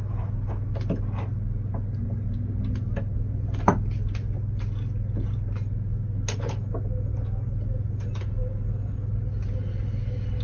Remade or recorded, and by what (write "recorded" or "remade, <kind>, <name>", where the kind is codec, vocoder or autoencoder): recorded